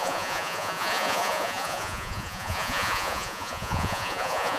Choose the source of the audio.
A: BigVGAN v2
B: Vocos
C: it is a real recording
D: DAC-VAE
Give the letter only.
B